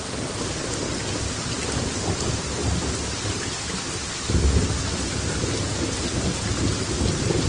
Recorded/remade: recorded